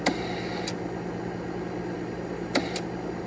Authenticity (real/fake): real